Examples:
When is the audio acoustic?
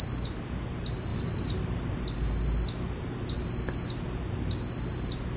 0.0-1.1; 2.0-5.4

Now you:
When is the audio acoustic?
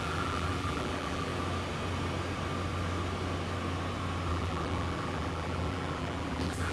1.3-4.3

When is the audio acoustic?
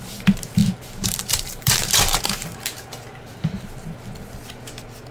0.0-0.6; 3.7-5.1